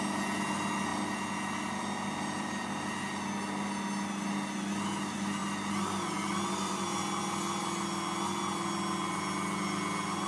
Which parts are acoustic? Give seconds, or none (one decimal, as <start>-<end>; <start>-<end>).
0.0-10.3